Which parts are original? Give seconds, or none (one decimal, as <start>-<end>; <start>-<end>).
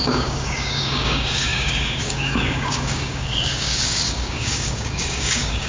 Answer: none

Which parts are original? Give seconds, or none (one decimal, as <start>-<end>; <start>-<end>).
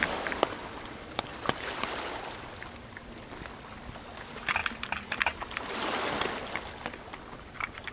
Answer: 0.0-7.9